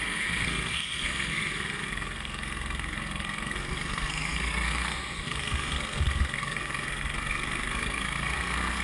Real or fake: fake